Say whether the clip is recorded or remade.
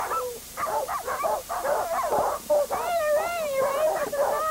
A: remade